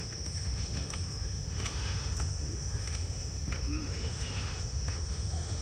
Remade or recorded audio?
remade